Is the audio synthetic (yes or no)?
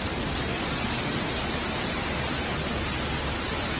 no